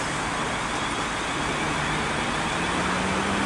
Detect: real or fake real